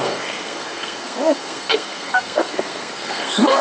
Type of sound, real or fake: fake